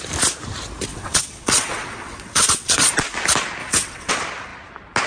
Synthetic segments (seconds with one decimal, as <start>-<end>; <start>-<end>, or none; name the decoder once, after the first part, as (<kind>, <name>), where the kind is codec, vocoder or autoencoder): 0.9-2.9 (vocoder, WaveNeXt); 3.6-4.1